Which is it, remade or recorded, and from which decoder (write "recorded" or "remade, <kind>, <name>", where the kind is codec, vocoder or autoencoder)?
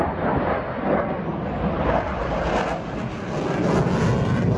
recorded